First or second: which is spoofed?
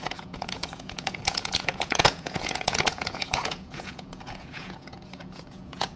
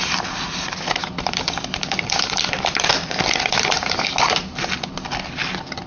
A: first